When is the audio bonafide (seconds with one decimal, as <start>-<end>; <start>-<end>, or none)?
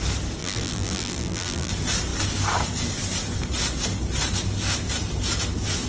0.0-0.4; 1.7-5.9